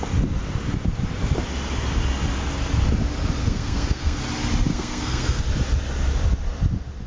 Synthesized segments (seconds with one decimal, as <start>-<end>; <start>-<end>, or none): 3.4-4.2; 4.7-5.4